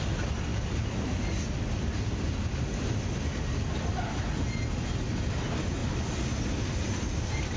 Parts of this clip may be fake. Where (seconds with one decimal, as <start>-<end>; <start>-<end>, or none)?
0.5-2.5